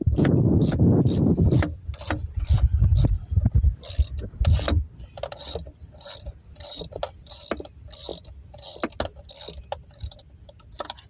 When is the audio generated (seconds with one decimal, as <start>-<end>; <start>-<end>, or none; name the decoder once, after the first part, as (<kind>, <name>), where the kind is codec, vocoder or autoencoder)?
none